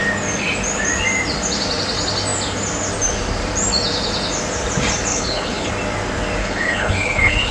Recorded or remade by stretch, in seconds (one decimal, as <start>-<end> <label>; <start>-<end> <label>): 0.0-5.1 recorded; 5.1-5.7 remade; 5.7-6.4 recorded; 6.4-7.5 remade